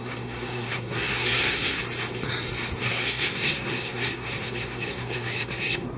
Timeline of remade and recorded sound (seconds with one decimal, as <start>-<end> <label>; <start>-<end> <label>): 0.0-1.8 remade; 1.8-2.8 recorded; 2.8-6.0 remade